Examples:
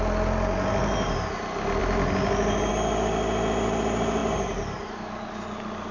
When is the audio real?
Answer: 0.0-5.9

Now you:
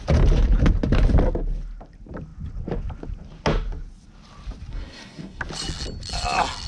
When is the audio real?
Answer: 0.0-4.7; 5.4-6.7

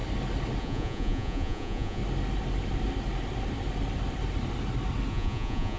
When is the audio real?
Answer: 0.0-0.6; 2.0-5.1

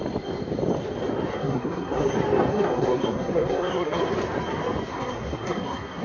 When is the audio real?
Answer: 0.0-1.3; 2.1-2.5; 4.0-4.9